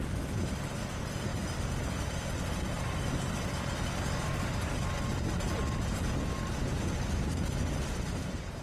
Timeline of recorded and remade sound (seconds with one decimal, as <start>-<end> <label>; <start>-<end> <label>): 0.0-8.6 recorded